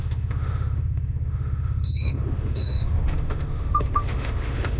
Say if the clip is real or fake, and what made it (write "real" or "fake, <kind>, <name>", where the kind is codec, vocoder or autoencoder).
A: fake, autoencoder, DAC-VAE